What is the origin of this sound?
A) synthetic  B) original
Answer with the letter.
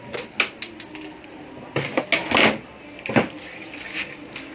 B